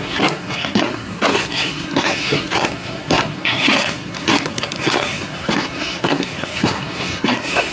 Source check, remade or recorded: remade